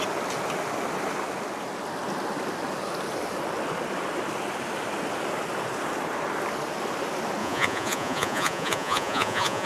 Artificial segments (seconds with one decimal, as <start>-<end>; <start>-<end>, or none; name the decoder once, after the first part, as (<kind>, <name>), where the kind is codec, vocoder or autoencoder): 7.4-9.7 (vocoder, Vocos)